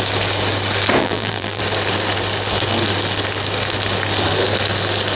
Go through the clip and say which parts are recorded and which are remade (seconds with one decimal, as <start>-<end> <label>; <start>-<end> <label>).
0.0-1.0 recorded; 1.0-1.6 remade; 1.6-5.2 recorded